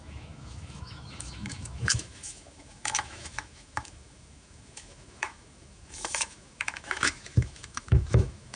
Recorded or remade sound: remade